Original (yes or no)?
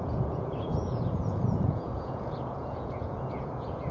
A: no